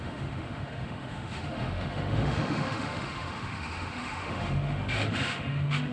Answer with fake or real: fake